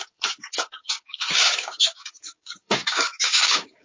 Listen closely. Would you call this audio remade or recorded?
remade